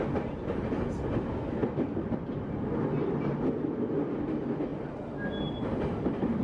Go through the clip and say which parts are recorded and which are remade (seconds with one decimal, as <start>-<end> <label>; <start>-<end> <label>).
0.0-1.6 recorded; 1.6-2.4 remade; 2.4-6.4 recorded